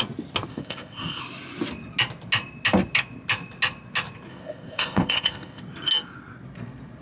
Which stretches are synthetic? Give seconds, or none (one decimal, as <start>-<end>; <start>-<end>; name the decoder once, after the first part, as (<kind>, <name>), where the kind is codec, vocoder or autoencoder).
0.5-1.2 (codec, ZipCodec); 4.3-5.6